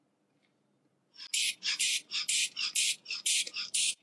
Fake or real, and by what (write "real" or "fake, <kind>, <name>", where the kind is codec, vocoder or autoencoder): real